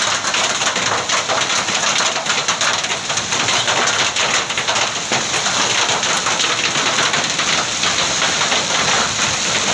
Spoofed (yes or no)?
no